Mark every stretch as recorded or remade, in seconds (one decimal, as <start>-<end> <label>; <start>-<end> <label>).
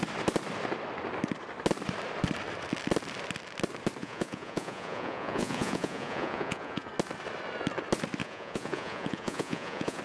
0.0-4.0 recorded; 4.0-6.9 remade; 6.9-8.2 recorded; 8.2-10.0 remade